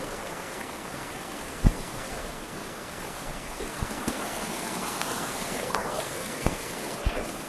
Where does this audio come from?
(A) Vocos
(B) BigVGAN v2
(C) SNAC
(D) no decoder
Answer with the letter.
C